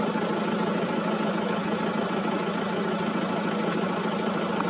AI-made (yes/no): no